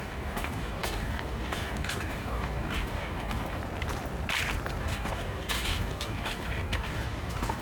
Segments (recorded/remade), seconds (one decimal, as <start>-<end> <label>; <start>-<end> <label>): 0.0-3.6 remade; 3.6-4.8 recorded; 4.8-7.6 remade